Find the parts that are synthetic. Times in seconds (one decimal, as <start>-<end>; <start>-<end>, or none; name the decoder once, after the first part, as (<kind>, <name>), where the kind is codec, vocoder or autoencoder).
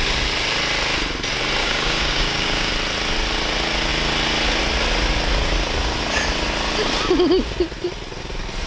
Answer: 1.6-2.7 (codec, DAC)